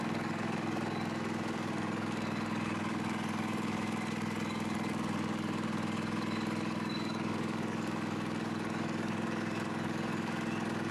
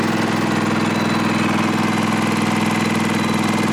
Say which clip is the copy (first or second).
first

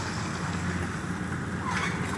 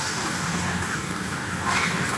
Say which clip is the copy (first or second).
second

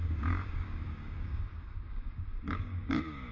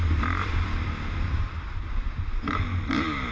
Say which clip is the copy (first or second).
first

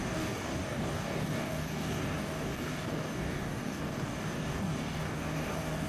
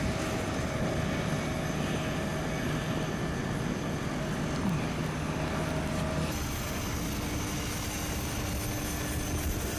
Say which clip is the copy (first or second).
first